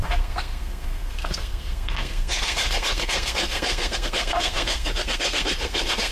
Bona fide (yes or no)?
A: no